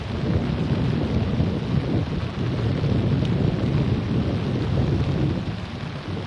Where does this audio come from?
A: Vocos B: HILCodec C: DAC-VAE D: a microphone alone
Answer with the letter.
D